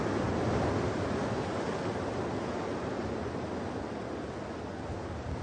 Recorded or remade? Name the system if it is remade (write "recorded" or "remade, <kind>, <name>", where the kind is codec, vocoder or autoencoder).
recorded